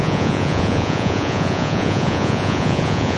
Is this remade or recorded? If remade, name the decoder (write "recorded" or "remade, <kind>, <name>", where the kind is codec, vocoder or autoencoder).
remade, vocoder, Vocos